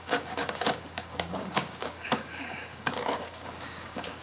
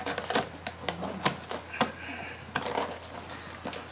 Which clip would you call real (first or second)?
second